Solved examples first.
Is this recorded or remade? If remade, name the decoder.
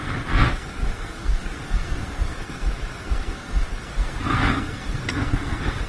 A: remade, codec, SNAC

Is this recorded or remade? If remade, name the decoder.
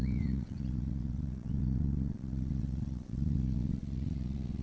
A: remade, vocoder, WaveNeXt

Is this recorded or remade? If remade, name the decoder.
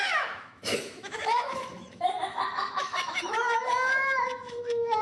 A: remade, autoencoder, DAC-VAE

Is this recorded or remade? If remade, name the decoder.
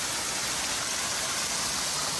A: recorded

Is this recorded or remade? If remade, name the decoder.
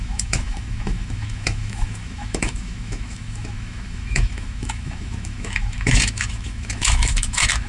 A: remade, autoencoder, DAC-VAE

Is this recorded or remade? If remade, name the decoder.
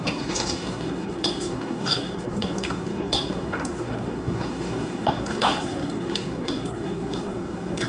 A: remade, codec, SNAC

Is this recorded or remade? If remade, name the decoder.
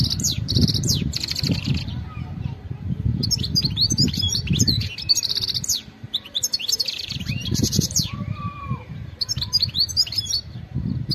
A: remade, vocoder, BigVGAN v2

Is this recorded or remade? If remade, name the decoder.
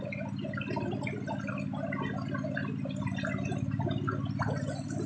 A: recorded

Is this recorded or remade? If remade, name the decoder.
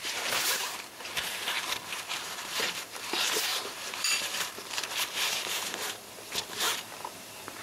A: remade, vocoder, BigVGAN v2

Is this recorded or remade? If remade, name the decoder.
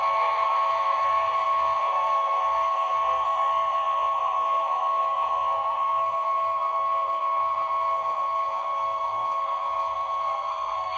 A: remade, codec, SNAC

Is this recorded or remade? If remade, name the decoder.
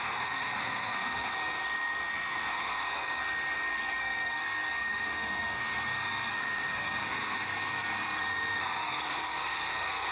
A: remade, codec, SNAC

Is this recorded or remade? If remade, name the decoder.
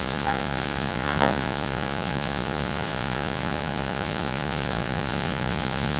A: remade, vocoder, Vocos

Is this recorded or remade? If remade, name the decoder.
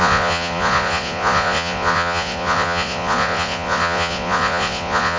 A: remade, vocoder, Vocos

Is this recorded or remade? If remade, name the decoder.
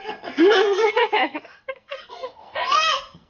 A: remade, codec, SNAC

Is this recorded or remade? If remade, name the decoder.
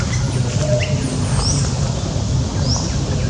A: recorded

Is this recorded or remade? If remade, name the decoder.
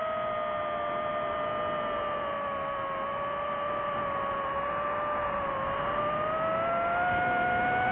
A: recorded